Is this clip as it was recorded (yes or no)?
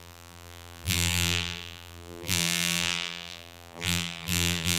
no